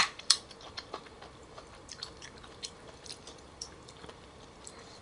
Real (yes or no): no